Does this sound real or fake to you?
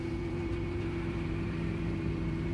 fake